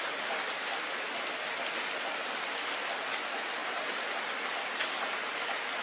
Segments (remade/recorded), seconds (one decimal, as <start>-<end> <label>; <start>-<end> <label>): 0.0-5.8 recorded